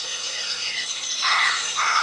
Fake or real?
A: fake